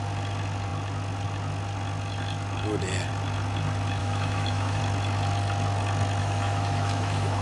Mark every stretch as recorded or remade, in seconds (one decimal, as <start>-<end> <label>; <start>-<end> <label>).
0.0-4.0 recorded; 4.0-4.8 remade; 4.8-6.2 recorded; 6.2-7.4 remade